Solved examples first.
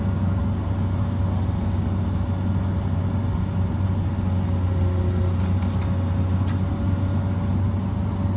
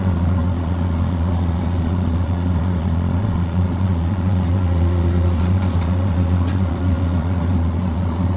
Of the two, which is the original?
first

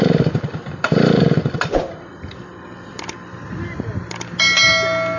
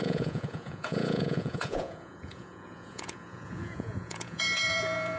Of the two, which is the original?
first